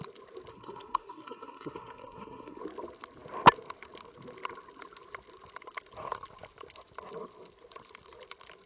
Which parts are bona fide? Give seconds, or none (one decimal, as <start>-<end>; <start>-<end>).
0.0-0.5; 2.6-8.7